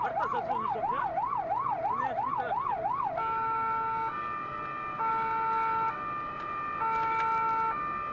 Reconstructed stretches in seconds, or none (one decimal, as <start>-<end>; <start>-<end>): none